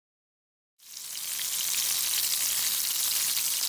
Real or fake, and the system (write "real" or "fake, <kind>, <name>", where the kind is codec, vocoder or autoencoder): real